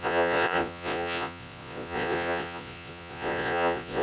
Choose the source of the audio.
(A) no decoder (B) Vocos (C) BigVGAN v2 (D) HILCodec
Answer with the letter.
B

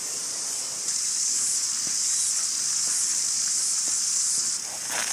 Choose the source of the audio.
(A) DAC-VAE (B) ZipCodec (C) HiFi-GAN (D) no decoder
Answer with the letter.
D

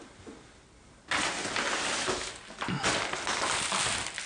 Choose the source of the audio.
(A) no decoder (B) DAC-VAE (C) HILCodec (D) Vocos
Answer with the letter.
A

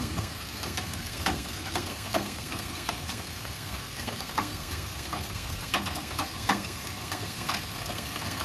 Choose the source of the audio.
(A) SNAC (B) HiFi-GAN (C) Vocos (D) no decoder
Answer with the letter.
A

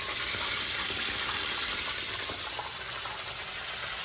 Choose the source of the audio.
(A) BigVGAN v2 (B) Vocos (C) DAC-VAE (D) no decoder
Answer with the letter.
A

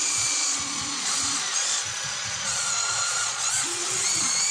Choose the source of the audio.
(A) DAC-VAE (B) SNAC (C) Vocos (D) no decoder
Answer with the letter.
C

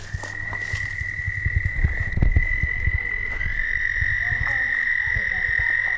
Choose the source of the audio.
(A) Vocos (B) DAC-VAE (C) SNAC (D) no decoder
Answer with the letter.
D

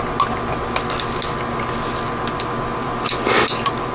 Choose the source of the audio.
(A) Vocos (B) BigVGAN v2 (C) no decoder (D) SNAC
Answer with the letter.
C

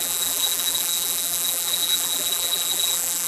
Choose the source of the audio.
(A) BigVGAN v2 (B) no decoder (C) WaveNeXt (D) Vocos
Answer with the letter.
A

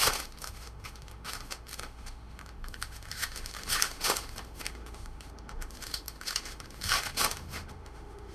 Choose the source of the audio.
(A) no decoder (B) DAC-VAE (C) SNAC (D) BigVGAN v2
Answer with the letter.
B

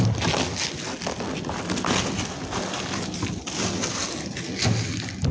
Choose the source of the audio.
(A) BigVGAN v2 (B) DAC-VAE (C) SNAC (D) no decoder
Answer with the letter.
D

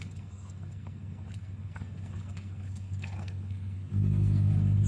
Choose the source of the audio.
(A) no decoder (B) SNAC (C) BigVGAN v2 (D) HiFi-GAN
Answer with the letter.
B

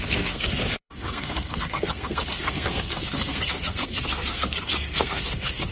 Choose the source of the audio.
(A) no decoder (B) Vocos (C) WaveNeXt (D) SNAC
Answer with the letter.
D